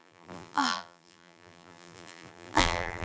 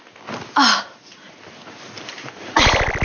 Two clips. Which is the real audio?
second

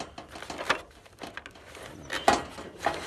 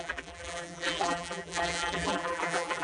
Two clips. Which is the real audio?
first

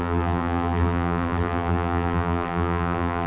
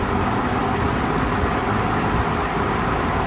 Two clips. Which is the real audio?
second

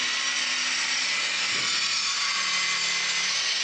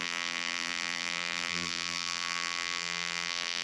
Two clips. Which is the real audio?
first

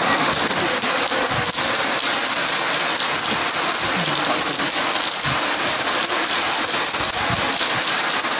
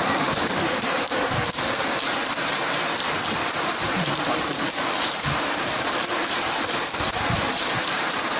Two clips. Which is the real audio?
first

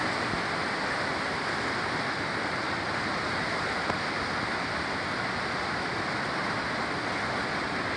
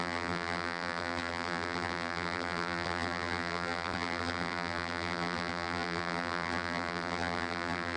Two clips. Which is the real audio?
first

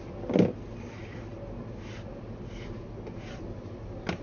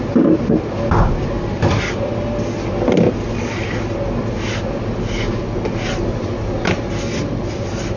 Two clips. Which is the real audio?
second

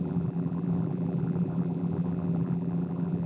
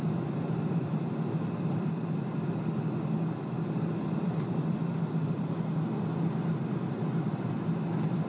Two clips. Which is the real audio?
second